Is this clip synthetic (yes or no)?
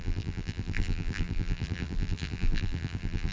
yes